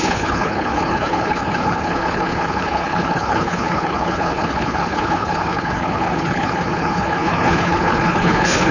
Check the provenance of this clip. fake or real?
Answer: fake